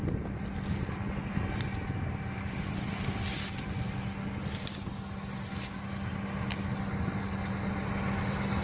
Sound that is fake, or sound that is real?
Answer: real